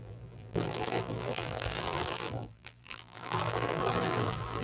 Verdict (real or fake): fake